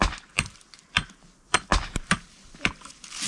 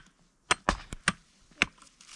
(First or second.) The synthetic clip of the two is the first